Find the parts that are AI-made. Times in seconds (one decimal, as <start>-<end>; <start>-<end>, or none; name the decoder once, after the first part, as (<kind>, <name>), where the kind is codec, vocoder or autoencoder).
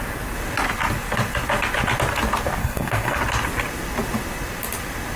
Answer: 2.6-3.2 (codec, SNAC)